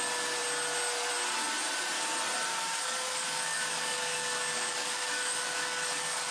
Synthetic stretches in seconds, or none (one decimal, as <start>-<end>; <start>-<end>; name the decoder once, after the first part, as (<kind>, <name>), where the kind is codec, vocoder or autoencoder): 2.5-6.3 (codec, DAC)